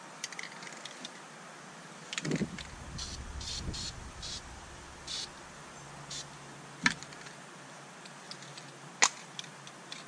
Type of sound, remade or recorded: recorded